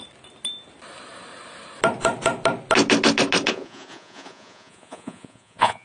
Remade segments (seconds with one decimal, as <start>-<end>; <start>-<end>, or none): 3.5-5.8